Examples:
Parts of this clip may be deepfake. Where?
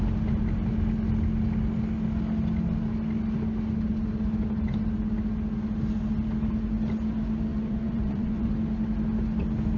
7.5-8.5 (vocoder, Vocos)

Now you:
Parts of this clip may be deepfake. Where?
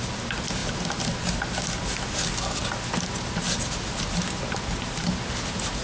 none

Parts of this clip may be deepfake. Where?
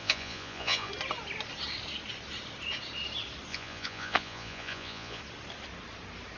0.0-0.9 (vocoder, Vocos); 3.5-5.2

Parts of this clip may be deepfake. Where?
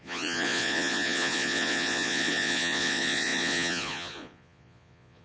0.0-5.2 (vocoder, Vocos)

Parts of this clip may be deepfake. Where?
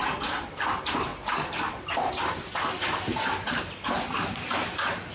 none